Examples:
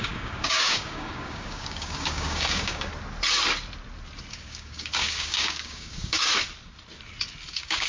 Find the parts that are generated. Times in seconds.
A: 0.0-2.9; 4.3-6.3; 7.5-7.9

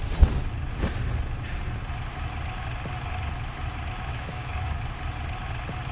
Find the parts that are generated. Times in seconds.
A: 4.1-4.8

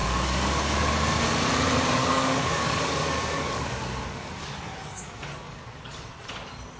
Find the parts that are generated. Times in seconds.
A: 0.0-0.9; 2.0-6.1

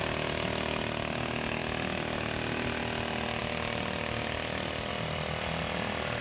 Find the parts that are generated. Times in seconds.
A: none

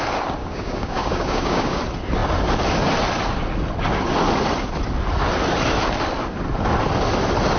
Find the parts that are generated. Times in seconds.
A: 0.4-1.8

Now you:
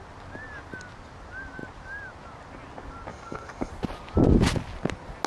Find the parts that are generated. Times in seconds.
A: 3.1-3.7

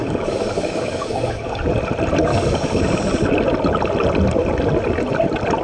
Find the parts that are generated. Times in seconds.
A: 0.0-1.6; 2.3-2.8